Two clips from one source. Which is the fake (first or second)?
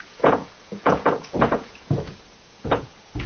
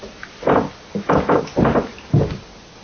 first